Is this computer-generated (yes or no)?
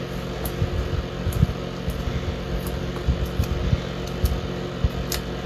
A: no